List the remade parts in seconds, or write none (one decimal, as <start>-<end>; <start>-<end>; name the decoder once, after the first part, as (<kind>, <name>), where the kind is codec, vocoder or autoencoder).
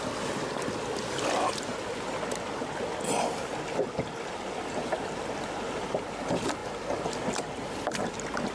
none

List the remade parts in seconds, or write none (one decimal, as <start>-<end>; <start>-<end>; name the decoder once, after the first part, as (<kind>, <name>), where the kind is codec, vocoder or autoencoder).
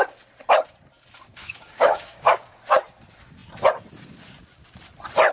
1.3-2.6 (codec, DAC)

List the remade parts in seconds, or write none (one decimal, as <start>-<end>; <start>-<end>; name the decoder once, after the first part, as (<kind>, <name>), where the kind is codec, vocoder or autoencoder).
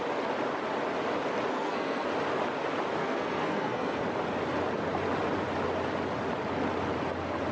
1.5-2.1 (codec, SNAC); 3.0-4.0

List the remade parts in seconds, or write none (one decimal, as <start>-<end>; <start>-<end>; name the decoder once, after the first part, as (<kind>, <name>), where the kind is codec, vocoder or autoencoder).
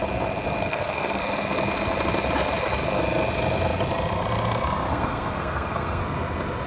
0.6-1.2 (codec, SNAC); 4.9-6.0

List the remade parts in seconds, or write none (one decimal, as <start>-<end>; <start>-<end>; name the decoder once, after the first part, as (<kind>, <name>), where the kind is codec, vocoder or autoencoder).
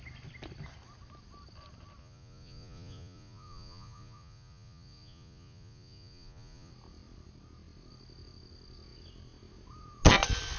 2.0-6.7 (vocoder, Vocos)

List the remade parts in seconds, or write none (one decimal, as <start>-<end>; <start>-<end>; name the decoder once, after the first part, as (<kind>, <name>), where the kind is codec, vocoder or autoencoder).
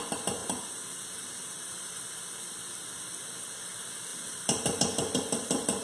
0.4-2.0 (vocoder, BigVGAN v2); 4.1-4.8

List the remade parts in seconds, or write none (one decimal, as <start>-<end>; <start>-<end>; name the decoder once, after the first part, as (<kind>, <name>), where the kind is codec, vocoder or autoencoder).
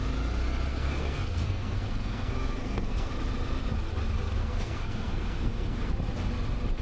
0.7-3.1 (codec, SNAC); 4.4-5.9